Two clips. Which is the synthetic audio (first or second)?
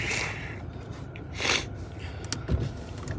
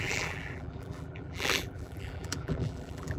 second